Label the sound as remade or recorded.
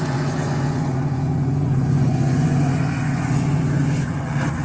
remade